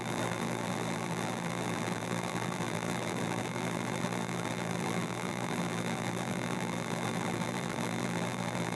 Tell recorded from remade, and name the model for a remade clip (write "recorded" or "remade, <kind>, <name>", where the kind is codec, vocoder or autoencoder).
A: remade, vocoder, BigVGAN v2